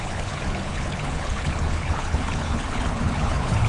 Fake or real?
fake